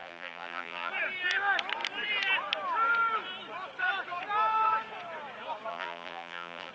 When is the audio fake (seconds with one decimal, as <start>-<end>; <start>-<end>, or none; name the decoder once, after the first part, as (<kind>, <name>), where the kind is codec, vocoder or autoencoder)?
0.0-0.9 (vocoder, BigVGAN v2); 5.7-6.7